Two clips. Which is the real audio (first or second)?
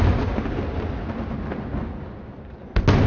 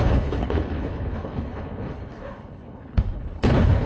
first